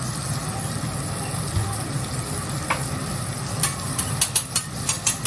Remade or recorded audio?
recorded